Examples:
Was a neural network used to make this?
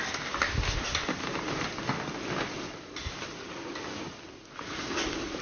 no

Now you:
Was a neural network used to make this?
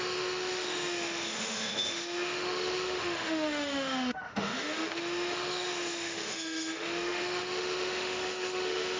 yes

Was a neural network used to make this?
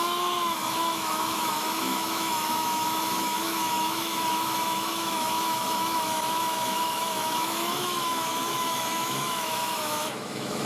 yes